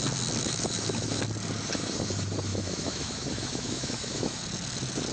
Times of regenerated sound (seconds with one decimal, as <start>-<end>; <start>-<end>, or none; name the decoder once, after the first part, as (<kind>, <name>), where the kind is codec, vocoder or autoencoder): 0.4-1.2 (autoencoder, DAC-VAE); 2.5-4.4